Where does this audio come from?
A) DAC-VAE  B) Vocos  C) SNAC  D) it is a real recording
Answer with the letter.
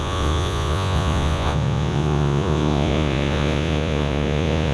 B